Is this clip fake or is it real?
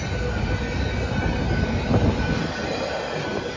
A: real